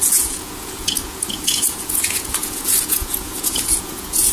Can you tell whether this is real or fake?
fake